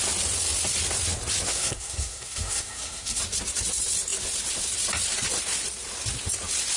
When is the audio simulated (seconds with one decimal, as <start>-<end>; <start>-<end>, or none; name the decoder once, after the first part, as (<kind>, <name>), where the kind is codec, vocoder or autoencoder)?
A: 1.5-3.2 (codec, SNAC)